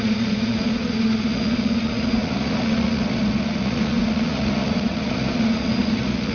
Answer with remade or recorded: remade